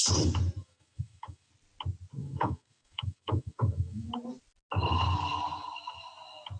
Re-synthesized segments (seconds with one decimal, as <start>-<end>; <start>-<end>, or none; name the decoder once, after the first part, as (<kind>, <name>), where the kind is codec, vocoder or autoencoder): 0.6-1.5 (autoencoder, DAC-VAE); 2.2-4.1

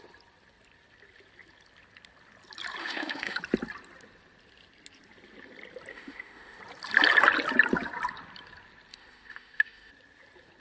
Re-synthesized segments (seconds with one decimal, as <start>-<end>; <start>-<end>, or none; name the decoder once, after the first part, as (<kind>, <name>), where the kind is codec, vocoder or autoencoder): 2.8-3.4 (autoencoder, DAC-VAE); 5.9-6.6; 8.9-9.9

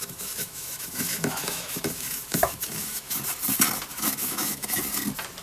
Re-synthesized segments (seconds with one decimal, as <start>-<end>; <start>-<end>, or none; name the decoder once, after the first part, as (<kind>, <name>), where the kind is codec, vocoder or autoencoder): 0.0-3.2 (autoencoder, DAC-VAE); 3.9-4.8

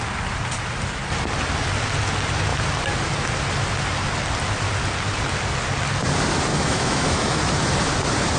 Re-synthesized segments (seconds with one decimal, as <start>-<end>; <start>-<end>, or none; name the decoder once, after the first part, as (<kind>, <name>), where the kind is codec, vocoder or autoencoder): 6.5-7.4 (autoencoder, DAC-VAE)

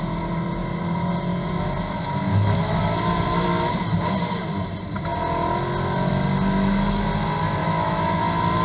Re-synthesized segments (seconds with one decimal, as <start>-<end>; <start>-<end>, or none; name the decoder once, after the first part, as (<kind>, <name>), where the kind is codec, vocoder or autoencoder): 2.3-2.8 (autoencoder, DAC-VAE); 7.6-8.2

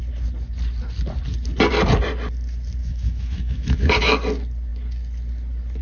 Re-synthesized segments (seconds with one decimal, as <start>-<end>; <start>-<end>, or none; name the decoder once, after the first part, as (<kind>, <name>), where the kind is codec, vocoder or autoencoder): 2.8-3.9 (autoencoder, DAC-VAE)

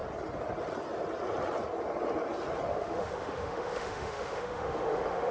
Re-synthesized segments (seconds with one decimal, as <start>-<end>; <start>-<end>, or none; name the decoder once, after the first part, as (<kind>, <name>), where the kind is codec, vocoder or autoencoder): 2.7-5.3 (autoencoder, DAC-VAE)